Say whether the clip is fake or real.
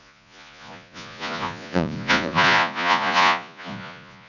fake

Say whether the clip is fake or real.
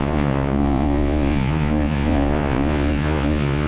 fake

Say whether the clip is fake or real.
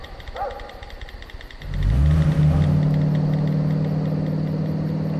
real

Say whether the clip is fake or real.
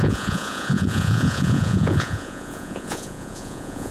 fake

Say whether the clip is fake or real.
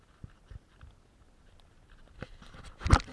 real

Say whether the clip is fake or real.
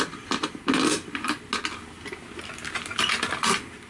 real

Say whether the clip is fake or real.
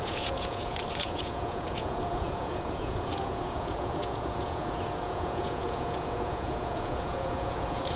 fake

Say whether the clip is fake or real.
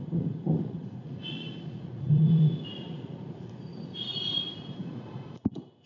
fake